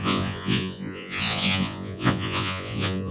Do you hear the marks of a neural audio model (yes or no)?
yes